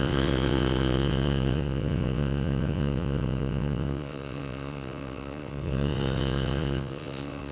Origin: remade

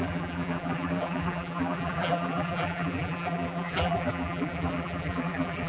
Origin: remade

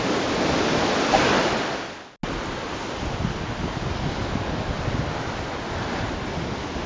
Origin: recorded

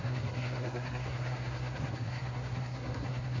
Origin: remade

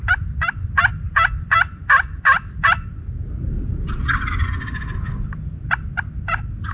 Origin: recorded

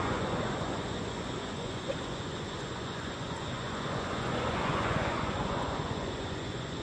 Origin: remade